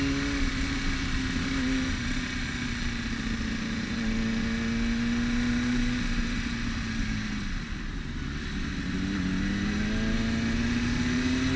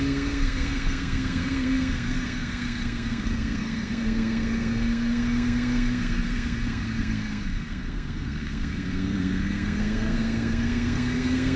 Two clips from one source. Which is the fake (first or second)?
second